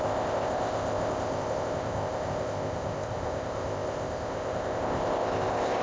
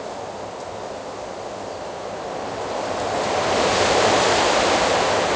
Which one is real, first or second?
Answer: second